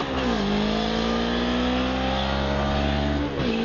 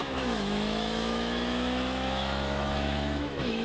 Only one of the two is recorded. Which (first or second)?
first